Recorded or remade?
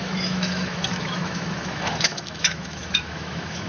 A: remade